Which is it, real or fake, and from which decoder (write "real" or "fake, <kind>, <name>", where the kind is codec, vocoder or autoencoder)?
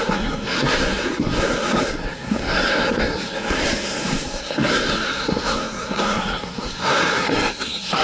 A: fake, codec, SNAC